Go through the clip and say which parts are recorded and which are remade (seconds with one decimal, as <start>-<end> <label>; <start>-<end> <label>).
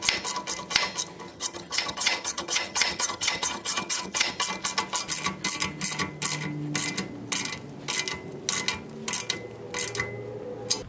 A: 0.0-1.3 recorded; 1.3-4.3 remade; 4.3-10.9 recorded